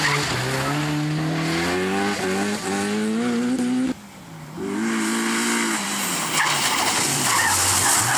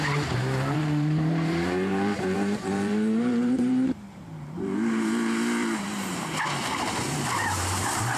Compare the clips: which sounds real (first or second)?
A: first